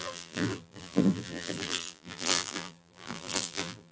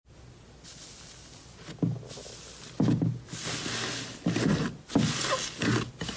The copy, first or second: first